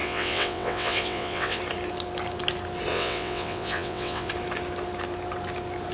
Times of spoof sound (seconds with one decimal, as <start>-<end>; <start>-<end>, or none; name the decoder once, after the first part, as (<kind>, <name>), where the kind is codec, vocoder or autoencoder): 0.0-1.6 (vocoder, WaveNeXt); 2.9-4.3